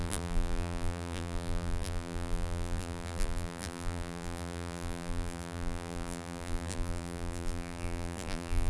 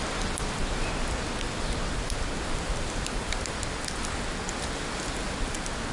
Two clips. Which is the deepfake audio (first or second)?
first